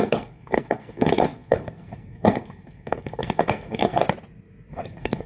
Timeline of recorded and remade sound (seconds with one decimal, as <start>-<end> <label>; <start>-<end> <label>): 0.0-4.0 remade; 4.0-4.7 recorded; 4.7-5.3 remade